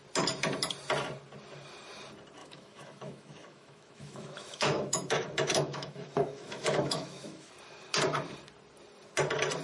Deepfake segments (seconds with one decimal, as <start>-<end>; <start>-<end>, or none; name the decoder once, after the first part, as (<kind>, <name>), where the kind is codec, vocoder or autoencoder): 2.4-7.5 (autoencoder, DAC-VAE)